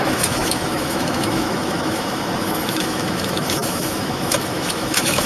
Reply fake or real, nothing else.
fake